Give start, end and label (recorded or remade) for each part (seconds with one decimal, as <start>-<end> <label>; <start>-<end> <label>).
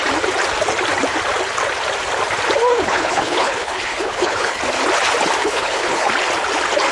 0.0-2.7 recorded; 2.7-4.6 remade; 4.6-5.4 recorded; 5.4-6.1 remade; 6.1-6.9 recorded